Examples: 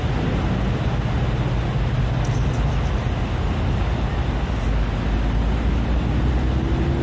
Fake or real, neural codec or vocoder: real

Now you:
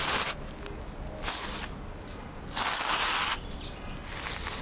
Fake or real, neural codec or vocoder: real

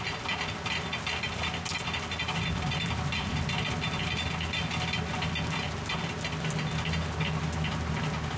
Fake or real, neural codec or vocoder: real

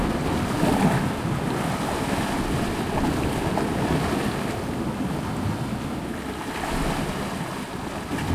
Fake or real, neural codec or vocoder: real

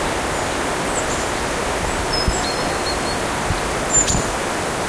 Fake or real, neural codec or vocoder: real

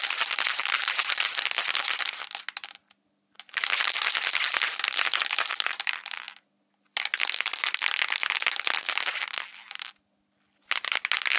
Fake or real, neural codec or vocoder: real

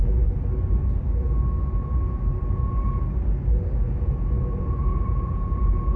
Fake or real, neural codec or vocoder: real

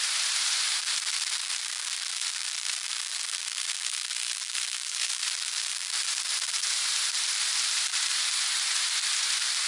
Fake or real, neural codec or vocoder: fake, vocoder, BigVGAN v2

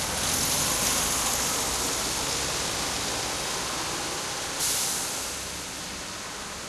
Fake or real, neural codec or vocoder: real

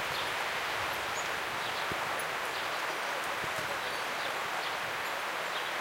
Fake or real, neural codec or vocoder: real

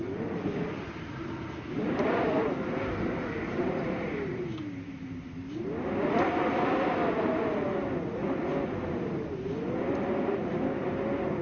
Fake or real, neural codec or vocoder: real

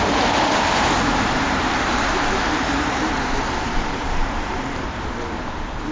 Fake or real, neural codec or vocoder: fake, vocoder, BigVGAN v2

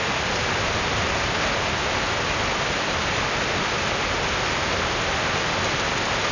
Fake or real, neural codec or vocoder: real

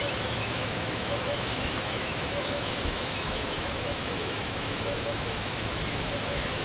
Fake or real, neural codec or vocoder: fake, autoencoder, DAC-VAE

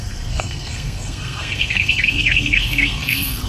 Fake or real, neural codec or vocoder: fake, codec, SNAC